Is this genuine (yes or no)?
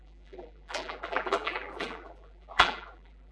no